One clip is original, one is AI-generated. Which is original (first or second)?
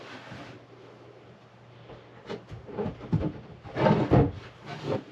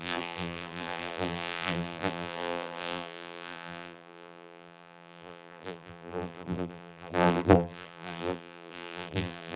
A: first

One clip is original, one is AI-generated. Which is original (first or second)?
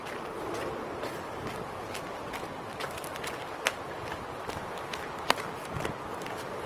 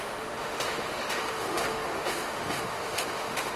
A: first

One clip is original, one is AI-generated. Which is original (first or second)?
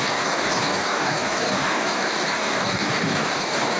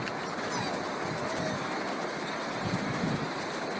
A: second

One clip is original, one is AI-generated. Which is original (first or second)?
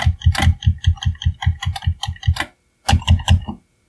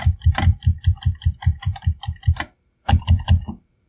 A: first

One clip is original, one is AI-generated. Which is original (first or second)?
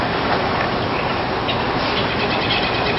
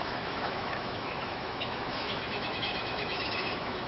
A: first